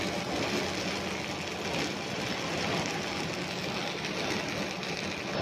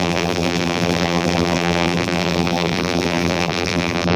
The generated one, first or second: second